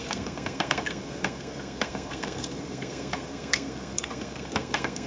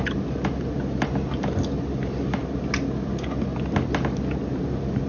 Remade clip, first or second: first